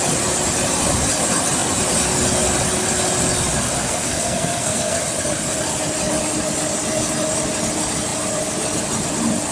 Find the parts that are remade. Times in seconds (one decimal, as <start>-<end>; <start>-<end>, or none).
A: 3.8-5.0